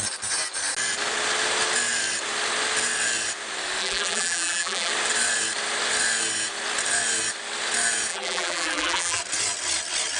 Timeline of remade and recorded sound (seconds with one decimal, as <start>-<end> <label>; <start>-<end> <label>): 0.0-3.8 recorded; 3.8-4.9 remade; 4.9-8.1 recorded; 8.1-9.2 remade; 9.2-10.2 recorded